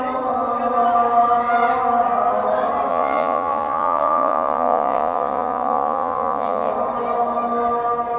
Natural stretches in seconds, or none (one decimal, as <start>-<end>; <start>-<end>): 0.0-2.9; 6.7-8.2